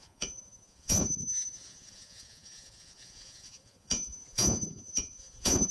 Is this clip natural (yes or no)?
no